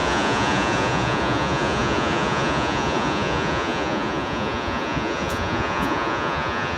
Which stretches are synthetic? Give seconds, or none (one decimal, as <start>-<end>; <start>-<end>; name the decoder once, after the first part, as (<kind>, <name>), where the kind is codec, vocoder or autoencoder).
0.0-6.8 (vocoder, Vocos)